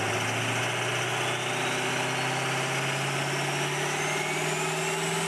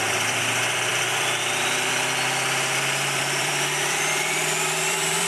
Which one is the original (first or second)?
first